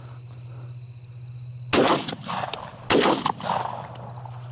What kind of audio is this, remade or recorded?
recorded